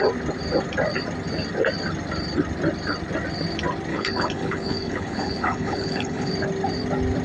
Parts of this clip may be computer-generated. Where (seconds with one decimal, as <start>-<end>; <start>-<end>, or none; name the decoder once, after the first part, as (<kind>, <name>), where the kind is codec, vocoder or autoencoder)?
3.9-6.3 (codec, HILCodec)